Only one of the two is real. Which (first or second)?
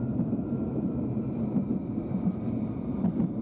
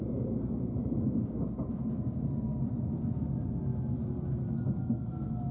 second